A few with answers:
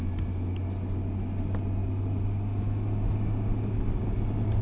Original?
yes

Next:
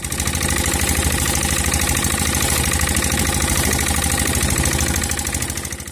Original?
yes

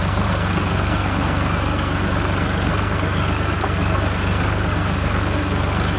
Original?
no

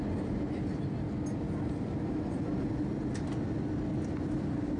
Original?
yes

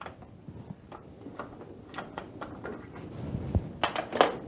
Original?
yes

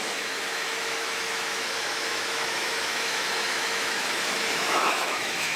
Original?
no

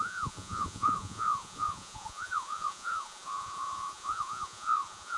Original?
no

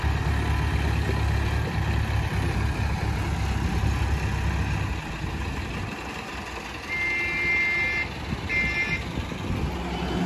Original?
yes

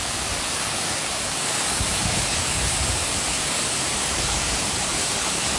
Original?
no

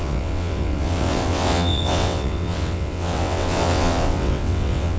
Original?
no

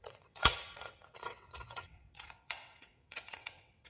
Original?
no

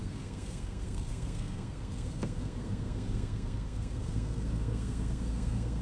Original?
no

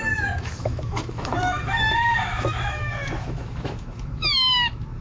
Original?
no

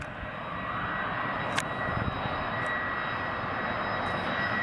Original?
yes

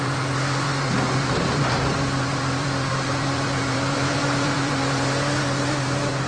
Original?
no